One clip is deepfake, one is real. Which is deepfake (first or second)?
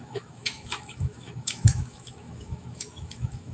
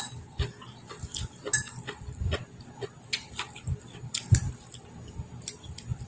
first